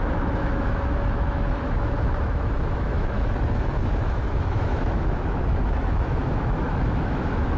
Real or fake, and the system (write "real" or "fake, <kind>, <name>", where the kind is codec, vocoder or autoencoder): fake, autoencoder, DAC-VAE